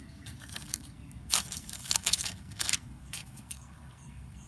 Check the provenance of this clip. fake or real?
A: fake